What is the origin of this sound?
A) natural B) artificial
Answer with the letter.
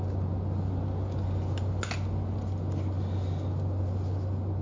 A